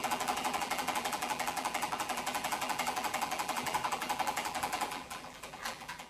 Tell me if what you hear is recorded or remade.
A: remade